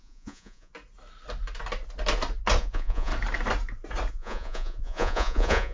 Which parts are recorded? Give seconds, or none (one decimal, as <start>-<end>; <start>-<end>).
0.7-2.6; 3.1-4.1